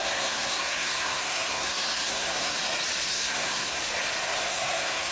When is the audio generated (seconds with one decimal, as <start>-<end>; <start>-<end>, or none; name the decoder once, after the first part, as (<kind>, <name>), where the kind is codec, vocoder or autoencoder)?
0.0-2.6 (codec, SNAC); 3.1-3.8; 4.5-5.1

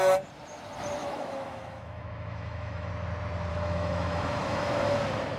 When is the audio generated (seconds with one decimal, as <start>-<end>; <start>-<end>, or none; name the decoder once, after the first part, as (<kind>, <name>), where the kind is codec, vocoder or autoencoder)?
1.0-2.9 (autoencoder, DAC-VAE); 3.5-5.0

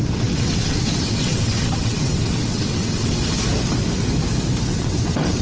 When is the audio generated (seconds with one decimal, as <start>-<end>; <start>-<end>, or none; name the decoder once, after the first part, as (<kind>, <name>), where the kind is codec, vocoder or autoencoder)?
0.0-3.2 (vocoder, WaveNeXt); 4.7-5.4